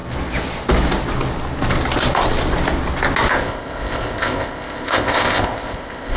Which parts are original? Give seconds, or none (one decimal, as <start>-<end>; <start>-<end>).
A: 0.0-3.3